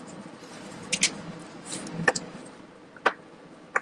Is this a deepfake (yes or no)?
no